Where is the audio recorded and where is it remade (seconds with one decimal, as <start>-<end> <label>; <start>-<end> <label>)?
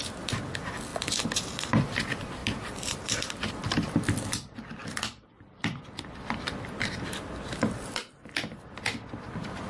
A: 0.0-0.9 recorded; 0.9-1.8 remade; 1.8-2.4 recorded; 2.4-3.5 remade; 3.5-4.8 recorded; 4.8-5.8 remade; 5.8-9.7 recorded